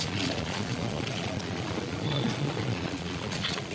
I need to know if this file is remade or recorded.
remade